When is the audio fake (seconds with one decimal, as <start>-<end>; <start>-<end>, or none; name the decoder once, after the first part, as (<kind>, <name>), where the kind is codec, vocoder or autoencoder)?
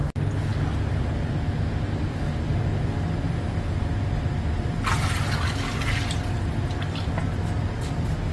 none